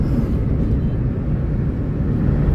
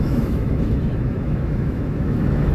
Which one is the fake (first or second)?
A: second